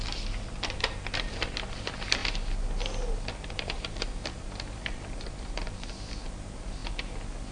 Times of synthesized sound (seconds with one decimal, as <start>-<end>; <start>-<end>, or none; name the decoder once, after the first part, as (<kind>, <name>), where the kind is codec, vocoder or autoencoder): 0.0-2.2 (vocoder, BigVGAN v2); 3.3-6.8